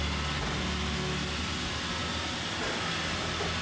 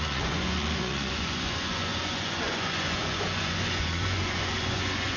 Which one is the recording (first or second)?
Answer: first